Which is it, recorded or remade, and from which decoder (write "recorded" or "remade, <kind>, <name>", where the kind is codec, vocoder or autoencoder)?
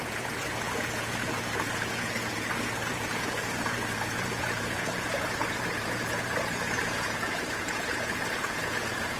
remade, vocoder, Vocos